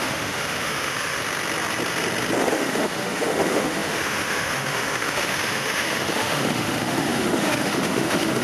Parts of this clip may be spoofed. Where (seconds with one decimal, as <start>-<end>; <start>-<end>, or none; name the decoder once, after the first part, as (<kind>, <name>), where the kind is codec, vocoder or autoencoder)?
0.0-1.2 (autoencoder, DAC-VAE); 2.4-8.4